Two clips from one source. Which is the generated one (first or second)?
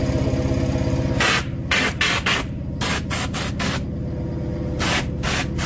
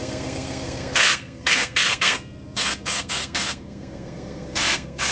second